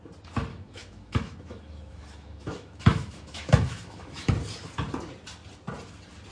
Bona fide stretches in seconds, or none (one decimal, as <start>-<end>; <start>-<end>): 0.0-0.5; 4.3-6.3